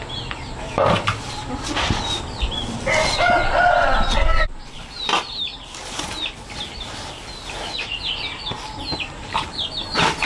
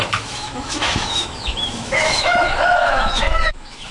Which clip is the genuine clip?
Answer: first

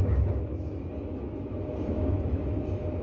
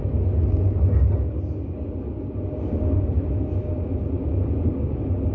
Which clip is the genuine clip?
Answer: second